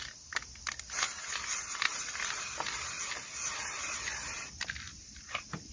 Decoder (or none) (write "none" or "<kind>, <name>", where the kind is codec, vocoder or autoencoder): none